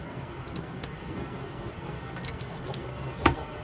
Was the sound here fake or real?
fake